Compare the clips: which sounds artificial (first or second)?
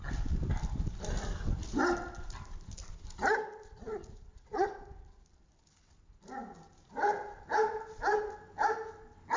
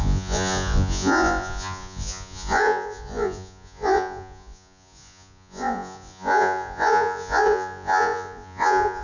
second